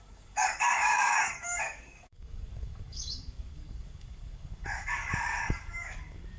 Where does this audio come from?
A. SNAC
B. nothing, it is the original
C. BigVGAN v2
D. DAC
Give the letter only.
D